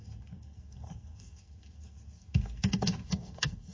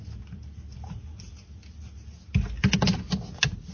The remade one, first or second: first